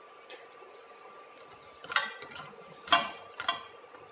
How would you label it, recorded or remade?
recorded